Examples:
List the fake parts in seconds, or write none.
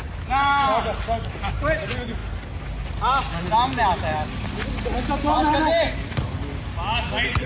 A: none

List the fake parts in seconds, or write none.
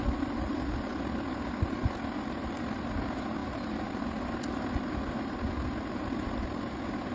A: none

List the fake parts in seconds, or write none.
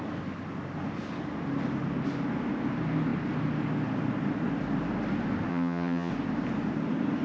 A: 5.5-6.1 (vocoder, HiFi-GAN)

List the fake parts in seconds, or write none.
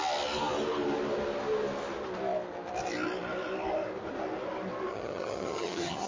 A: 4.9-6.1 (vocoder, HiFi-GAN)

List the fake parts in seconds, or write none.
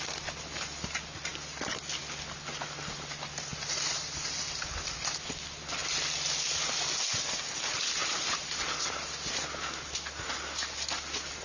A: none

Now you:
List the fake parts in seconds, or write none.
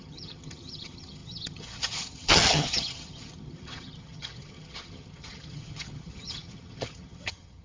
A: 0.0-7.6 (vocoder, HiFi-GAN)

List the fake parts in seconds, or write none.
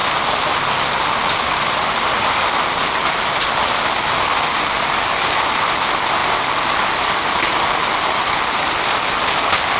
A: none